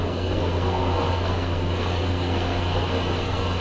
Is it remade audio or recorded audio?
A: remade